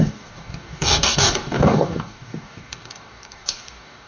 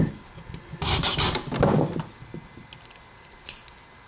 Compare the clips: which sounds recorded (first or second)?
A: second